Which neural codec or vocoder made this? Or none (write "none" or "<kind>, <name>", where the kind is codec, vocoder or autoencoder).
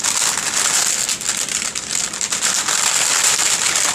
none